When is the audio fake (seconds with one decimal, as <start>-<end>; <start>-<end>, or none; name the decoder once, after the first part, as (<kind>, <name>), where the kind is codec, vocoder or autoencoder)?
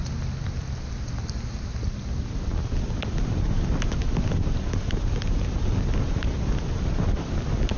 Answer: none